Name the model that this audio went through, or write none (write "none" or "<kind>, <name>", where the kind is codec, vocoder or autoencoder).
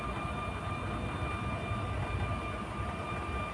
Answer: none